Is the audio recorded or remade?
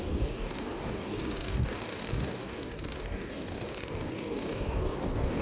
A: remade